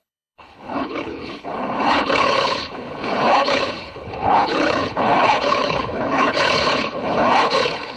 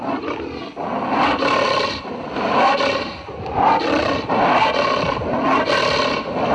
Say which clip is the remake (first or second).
first